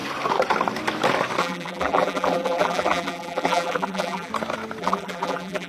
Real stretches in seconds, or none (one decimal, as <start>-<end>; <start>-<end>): 0.0-1.4; 4.3-4.8